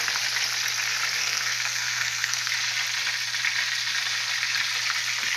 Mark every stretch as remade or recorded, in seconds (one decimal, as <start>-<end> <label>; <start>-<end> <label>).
0.0-1.2 recorded; 1.2-2.5 remade; 2.5-5.4 recorded